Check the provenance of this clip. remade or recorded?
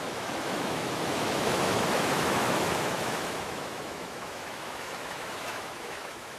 remade